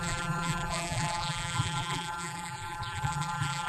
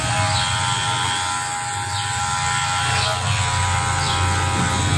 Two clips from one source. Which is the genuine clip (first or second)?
second